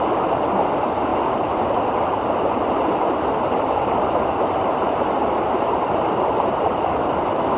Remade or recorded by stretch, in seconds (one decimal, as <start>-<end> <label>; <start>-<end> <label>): 0.0-7.6 recorded